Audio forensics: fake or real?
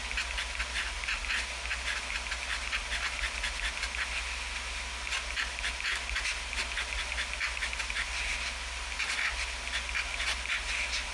real